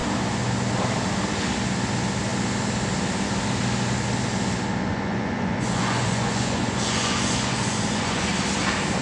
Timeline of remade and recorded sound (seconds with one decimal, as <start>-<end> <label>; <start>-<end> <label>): 0.0-4.9 recorded; 4.9-8.3 remade; 8.3-9.0 recorded